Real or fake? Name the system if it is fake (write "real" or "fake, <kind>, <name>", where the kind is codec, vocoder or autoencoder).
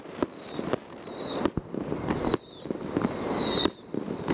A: real